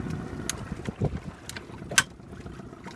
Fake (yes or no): no